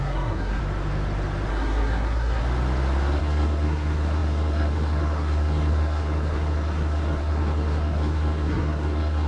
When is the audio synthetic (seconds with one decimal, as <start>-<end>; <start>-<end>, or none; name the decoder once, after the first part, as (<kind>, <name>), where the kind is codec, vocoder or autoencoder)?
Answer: 0.0-0.6 (codec, SNAC); 1.5-2.4; 3.2-9.3